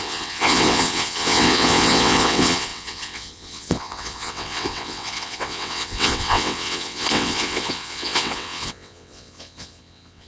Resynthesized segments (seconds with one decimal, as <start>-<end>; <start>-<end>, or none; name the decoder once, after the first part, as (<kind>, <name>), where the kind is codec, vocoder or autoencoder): 0.0-10.3 (vocoder, WaveNeXt)